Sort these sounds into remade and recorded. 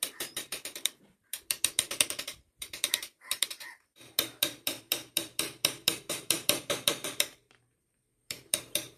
remade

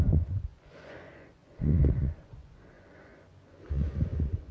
remade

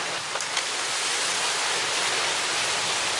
recorded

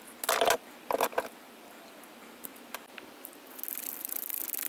recorded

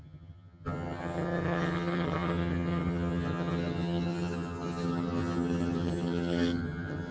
remade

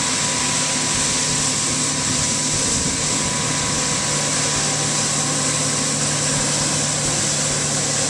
recorded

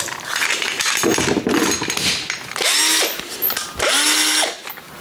recorded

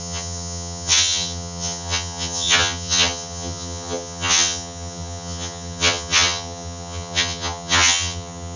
remade